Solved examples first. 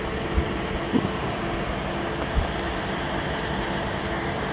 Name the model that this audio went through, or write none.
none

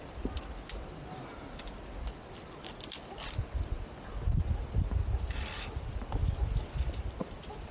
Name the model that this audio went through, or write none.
none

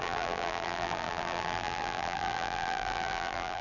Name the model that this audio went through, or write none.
vocoder, BigVGAN v2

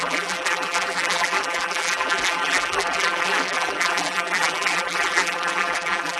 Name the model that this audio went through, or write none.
vocoder, BigVGAN v2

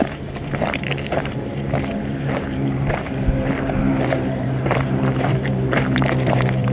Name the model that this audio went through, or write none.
vocoder, BigVGAN v2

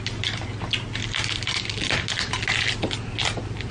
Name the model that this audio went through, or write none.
none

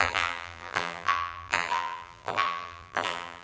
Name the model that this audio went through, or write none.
vocoder, BigVGAN v2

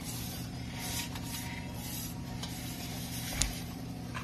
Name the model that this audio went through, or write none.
vocoder, BigVGAN v2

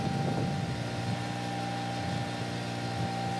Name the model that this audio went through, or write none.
none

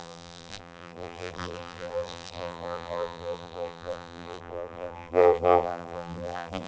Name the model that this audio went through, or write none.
vocoder, BigVGAN v2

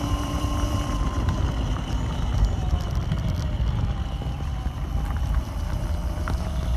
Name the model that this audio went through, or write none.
vocoder, BigVGAN v2